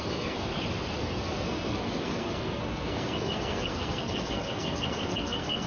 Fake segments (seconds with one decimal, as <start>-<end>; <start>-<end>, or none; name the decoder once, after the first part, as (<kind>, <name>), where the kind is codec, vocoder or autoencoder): 0.0-0.5 (codec, SNAC); 1.0-5.7